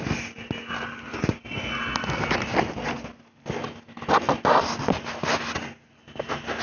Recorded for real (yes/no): yes